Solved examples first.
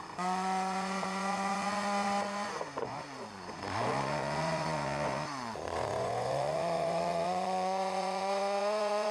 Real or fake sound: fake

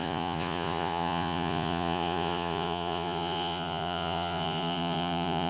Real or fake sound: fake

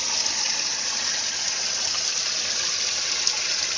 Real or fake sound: real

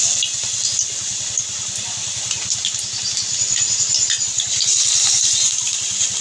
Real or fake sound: real